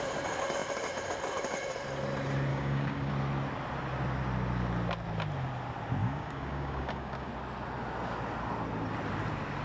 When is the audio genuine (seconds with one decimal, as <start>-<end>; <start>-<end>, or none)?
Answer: 0.0-2.5; 3.1-6.0; 7.3-9.6